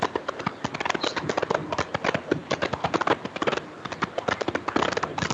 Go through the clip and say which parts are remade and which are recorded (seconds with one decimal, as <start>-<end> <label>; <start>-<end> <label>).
0.0-5.3 recorded

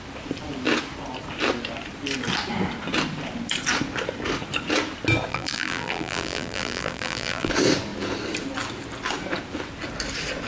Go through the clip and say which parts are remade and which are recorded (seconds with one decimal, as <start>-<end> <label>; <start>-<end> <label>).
0.0-5.3 recorded; 5.3-7.5 remade; 7.5-10.5 recorded

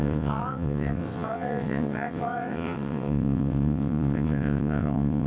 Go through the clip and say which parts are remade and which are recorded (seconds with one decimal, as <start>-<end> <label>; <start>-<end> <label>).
0.0-5.3 remade

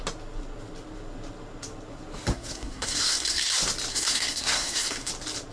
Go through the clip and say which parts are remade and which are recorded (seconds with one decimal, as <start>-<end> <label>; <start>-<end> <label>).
0.0-2.3 recorded; 2.3-3.5 remade; 3.5-3.9 recorded; 3.9-5.1 remade; 5.1-5.5 recorded

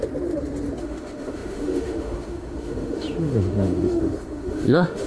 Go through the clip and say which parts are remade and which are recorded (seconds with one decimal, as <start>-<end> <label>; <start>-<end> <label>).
0.0-0.8 recorded; 0.8-5.1 remade

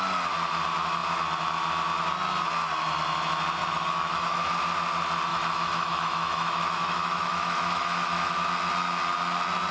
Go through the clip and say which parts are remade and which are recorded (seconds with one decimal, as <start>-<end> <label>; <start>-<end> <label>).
0.0-3.6 recorded; 3.6-4.5 remade; 4.5-5.3 recorded; 5.3-8.3 remade; 8.3-9.7 recorded

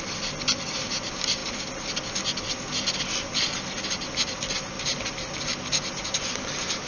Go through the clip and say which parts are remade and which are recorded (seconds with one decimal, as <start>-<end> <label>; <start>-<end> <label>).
0.0-6.9 recorded